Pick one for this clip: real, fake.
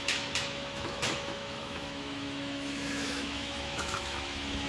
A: fake